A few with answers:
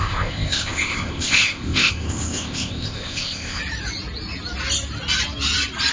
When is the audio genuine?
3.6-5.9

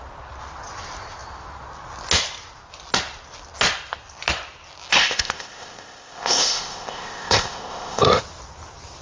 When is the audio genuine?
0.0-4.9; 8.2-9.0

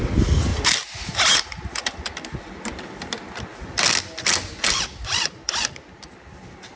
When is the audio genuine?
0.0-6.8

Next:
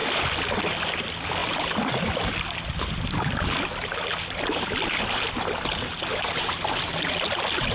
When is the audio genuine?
0.0-7.7